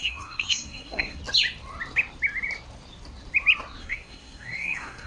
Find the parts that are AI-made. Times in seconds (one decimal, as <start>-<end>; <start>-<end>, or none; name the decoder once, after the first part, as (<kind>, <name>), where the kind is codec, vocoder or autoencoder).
0.0-1.2 (codec, SNAC); 3.8-5.1

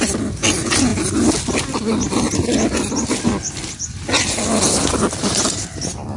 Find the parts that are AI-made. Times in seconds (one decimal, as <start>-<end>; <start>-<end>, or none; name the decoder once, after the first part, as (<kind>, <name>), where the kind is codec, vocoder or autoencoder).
none

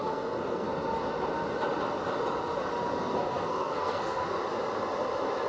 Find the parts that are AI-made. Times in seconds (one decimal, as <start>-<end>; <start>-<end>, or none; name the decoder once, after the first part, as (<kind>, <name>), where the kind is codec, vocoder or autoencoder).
0.0-0.7 (codec, SNAC); 3.0-4.4

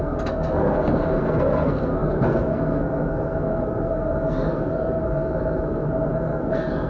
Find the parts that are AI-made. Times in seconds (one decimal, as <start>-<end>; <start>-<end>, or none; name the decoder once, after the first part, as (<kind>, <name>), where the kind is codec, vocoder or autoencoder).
0.0-6.9 (codec, SNAC)

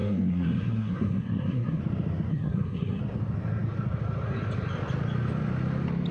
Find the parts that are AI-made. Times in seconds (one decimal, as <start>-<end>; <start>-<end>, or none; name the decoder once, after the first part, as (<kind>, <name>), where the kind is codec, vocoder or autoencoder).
0.0-1.8 (codec, SNAC); 2.3-3.0

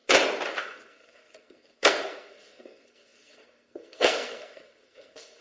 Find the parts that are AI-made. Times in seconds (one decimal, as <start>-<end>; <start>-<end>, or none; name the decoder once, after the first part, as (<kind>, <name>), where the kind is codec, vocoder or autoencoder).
0.6-5.4 (codec, SNAC)